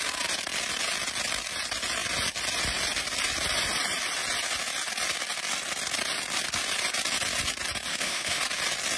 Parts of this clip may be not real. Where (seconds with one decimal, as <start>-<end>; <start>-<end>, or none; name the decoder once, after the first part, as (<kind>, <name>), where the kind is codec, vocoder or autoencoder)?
7.9-8.4 (autoencoder, DAC-VAE)